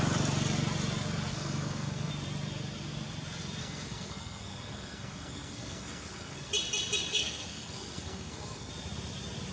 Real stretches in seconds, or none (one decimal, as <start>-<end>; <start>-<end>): 0.0-1.3; 2.1-3.6; 6.5-7.1; 8.7-9.5